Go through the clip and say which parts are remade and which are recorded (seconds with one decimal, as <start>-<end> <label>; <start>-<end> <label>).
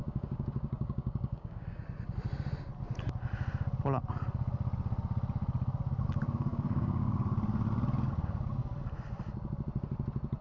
0.0-1.8 remade; 1.8-6.5 recorded; 6.5-7.1 remade; 7.1-10.4 recorded